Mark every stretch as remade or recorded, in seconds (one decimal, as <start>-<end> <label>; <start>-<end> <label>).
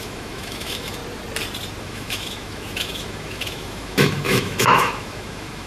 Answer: 0.0-1.0 remade; 1.0-1.8 recorded; 1.8-5.7 remade